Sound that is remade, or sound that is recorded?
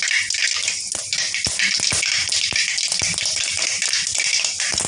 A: recorded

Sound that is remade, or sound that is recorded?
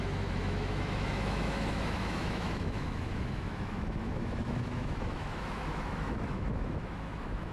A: remade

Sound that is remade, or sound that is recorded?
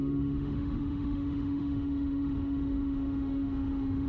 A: remade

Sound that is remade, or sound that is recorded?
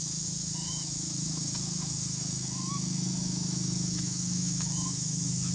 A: remade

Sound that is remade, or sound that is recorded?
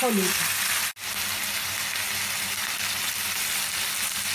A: recorded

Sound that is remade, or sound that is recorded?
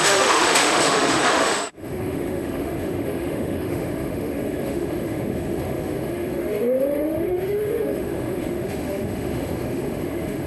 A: remade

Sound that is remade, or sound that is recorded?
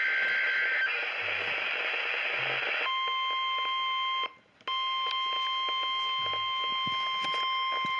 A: recorded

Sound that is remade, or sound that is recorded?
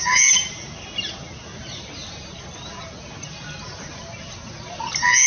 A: recorded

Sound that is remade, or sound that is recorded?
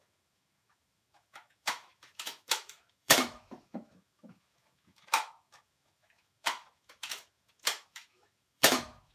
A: remade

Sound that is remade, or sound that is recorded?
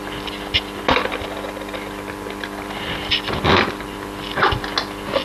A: recorded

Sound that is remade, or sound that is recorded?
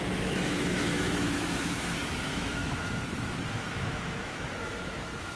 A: remade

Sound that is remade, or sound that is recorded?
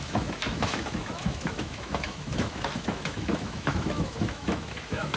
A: remade